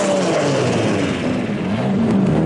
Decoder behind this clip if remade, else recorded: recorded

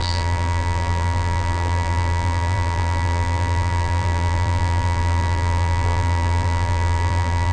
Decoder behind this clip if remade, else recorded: remade, vocoder, BigVGAN v2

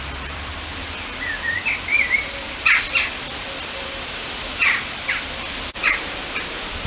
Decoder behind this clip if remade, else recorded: remade, vocoder, BigVGAN v2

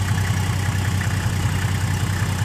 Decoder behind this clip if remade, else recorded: recorded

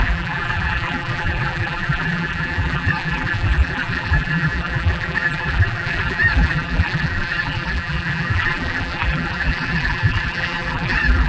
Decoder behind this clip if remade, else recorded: remade, vocoder, BigVGAN v2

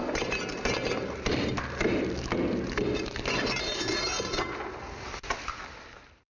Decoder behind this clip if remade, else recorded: recorded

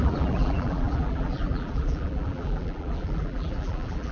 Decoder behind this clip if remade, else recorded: remade, vocoder, BigVGAN v2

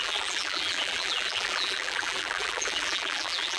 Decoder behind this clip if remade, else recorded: remade, vocoder, BigVGAN v2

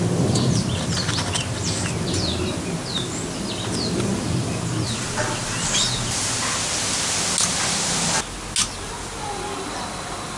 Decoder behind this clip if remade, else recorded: recorded